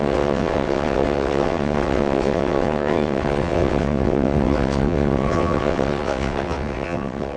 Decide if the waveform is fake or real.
fake